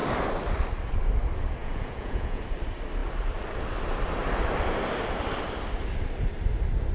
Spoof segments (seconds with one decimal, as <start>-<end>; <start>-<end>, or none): 1.6-2.4